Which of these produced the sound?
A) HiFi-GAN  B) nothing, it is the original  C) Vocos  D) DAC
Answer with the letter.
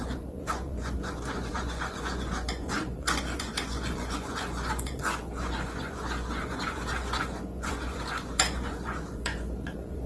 C